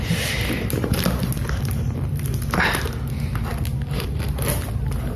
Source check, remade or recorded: recorded